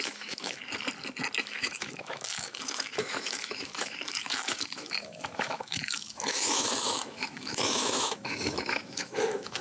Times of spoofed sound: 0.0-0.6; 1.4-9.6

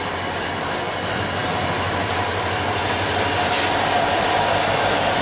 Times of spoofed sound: none

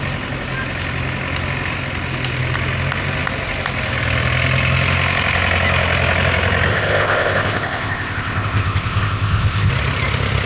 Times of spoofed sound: 6.7-9.7

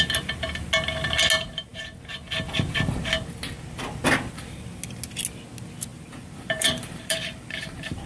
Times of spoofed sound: 5.9-8.1

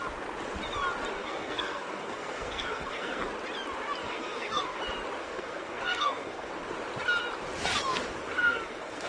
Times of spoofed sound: 1.2-3.3; 4.0-4.8; 5.2-6.5; 8.4-9.1